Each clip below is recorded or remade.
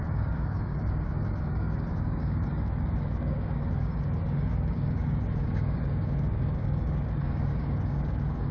remade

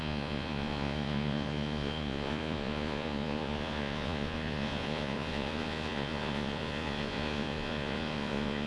remade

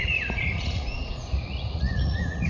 remade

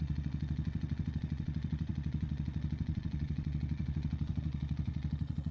remade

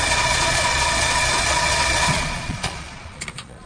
remade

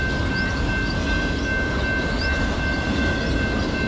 recorded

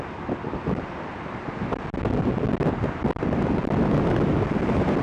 recorded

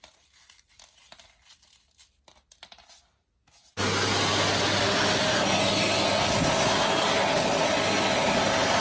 recorded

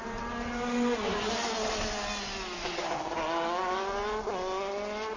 recorded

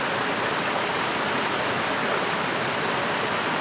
recorded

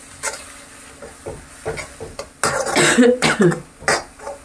recorded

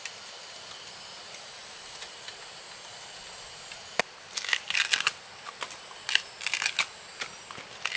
recorded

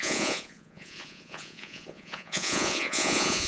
remade